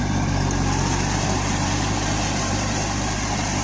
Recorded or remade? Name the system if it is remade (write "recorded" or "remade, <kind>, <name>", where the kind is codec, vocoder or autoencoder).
remade, vocoder, BigVGAN v2